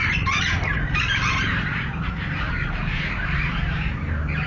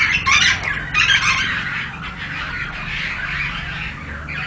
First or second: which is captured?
second